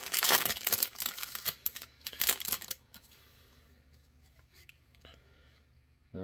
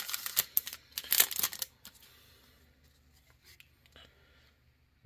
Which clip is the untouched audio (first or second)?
second